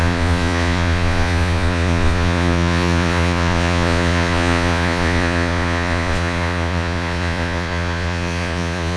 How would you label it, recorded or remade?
remade